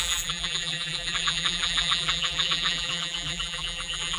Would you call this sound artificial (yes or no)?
yes